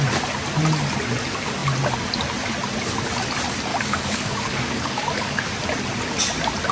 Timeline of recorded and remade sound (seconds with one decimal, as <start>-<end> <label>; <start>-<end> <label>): 0.0-3.7 recorded; 3.7-5.4 remade; 5.4-6.7 recorded